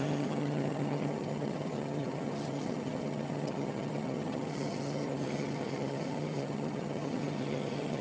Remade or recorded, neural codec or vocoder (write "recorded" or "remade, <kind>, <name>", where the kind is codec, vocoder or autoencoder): remade, vocoder, HiFi-GAN